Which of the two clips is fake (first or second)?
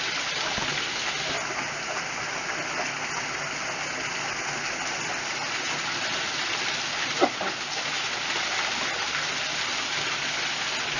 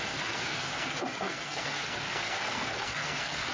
second